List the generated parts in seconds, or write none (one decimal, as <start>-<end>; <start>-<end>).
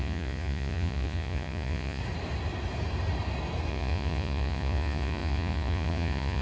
0.0-2.0; 3.7-6.4